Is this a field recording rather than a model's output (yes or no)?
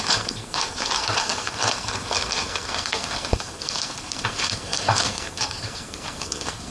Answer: no